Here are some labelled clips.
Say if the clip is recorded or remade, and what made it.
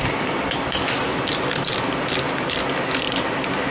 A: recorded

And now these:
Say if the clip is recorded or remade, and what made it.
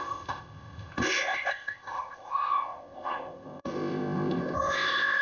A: remade, codec, ZipCodec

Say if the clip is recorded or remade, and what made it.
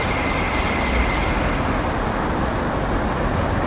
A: recorded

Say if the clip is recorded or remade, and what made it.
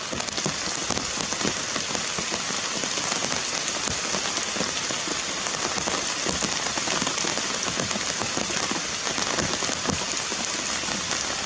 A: recorded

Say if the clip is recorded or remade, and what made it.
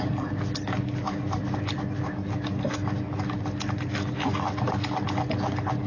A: recorded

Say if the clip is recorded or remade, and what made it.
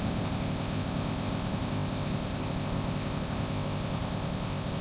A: remade, codec, ZipCodec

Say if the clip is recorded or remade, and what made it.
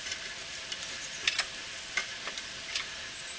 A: recorded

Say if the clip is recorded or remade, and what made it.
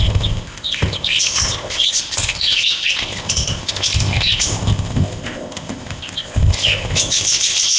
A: remade, codec, ZipCodec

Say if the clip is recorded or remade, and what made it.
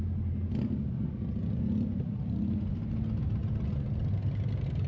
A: recorded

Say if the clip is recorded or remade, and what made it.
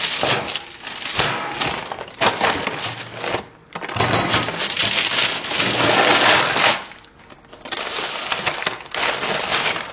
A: recorded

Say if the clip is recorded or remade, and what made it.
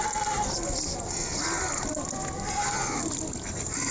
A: recorded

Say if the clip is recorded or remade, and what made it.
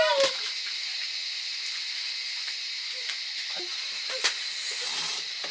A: recorded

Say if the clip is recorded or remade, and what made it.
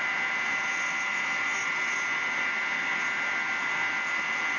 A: recorded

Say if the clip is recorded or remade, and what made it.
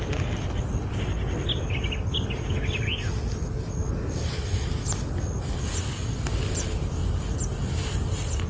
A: recorded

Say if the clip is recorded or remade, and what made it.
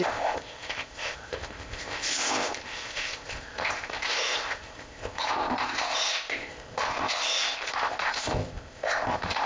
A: remade, codec, ZipCodec